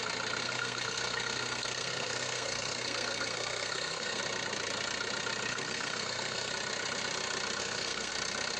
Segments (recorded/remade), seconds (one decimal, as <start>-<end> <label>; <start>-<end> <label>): 0.0-0.4 recorded; 0.4-4.2 remade; 4.2-5.5 recorded; 5.5-6.5 remade; 6.5-7.6 recorded; 7.6-8.1 remade; 8.1-8.6 recorded